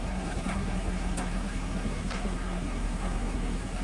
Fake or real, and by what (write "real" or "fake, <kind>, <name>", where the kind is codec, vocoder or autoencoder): fake, codec, SNAC